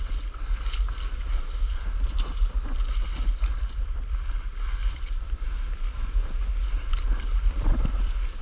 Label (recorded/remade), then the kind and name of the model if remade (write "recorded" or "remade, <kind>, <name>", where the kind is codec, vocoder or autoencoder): recorded